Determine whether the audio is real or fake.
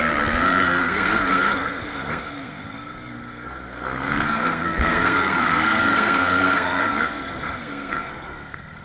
fake